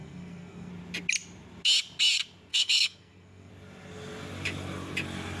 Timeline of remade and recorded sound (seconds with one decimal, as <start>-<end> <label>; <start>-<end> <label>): 0.0-0.7 remade; 0.7-2.5 recorded; 2.5-3.5 remade; 3.5-5.4 recorded